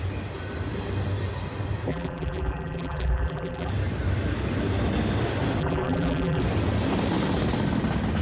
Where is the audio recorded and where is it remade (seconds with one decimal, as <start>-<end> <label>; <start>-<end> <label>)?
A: 0.0-1.9 recorded; 1.9-3.7 remade; 3.7-5.6 recorded; 5.6-6.4 remade; 6.4-8.2 recorded